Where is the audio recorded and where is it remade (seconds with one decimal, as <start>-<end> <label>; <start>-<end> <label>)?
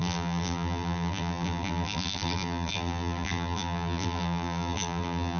0.0-5.4 remade